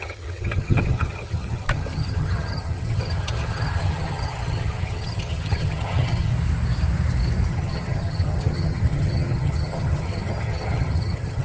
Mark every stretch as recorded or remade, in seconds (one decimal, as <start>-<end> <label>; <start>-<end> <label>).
0.0-6.3 remade; 6.3-7.5 recorded; 7.5-11.4 remade